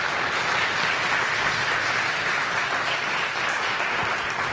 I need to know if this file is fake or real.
real